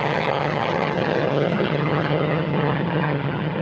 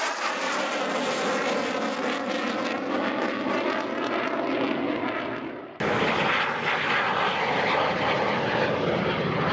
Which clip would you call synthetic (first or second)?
first